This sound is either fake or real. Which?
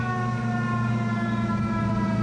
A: real